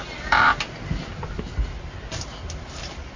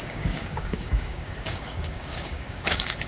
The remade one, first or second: second